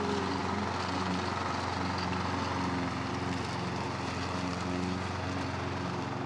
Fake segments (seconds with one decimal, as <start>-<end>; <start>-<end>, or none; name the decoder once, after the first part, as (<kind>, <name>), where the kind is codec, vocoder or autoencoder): none